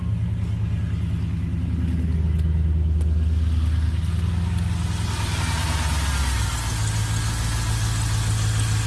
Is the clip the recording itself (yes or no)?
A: yes